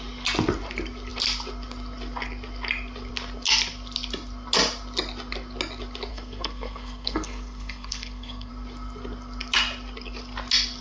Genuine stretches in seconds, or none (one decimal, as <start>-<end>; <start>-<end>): 0.0-6.1; 8.5-10.8